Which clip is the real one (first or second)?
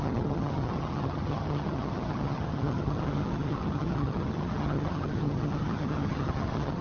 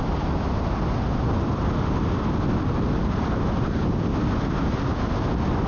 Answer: second